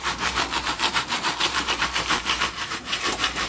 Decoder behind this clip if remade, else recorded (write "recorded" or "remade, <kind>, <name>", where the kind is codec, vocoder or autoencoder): remade, vocoder, BigVGAN v2